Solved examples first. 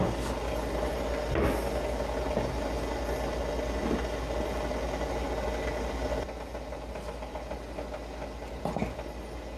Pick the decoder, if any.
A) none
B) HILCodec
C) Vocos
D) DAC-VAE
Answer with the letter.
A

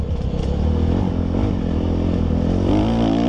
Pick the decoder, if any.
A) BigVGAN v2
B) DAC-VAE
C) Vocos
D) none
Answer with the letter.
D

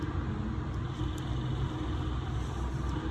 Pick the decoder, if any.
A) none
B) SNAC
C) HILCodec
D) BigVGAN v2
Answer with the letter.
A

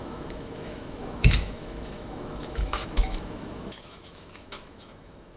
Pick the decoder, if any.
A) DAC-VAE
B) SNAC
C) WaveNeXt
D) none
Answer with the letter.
A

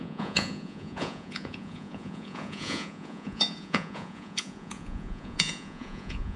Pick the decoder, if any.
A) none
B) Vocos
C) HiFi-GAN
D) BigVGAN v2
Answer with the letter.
B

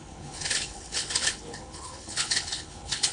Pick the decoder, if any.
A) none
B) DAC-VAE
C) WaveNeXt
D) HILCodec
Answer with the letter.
D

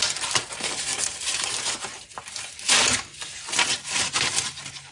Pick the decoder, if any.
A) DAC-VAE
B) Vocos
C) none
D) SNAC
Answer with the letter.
C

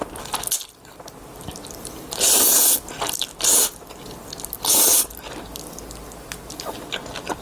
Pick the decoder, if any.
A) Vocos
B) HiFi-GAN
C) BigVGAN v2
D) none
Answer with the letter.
D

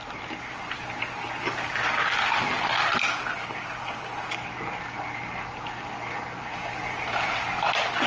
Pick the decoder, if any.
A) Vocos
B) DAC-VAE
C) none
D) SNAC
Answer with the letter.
C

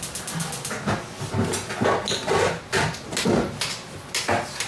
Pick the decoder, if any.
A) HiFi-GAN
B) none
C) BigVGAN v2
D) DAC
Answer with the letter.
B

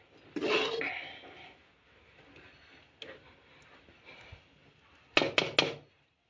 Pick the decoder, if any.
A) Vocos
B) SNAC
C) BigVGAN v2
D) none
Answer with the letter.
D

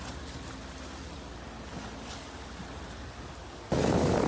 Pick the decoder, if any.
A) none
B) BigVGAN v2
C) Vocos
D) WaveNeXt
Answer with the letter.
A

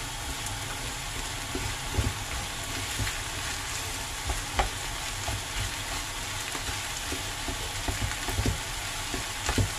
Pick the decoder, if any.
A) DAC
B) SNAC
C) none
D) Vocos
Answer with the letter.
C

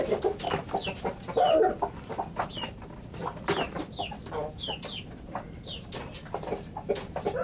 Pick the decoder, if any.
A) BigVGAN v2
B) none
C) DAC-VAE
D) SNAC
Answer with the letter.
B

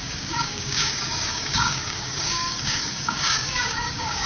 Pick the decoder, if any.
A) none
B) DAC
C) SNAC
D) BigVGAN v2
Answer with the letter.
B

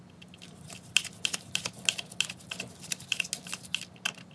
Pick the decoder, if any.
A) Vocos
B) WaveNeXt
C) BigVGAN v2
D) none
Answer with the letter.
D